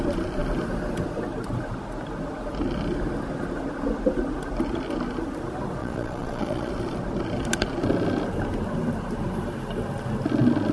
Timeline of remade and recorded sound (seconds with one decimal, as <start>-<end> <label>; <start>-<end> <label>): 0.0-5.8 recorded; 5.8-6.7 remade; 6.7-10.7 recorded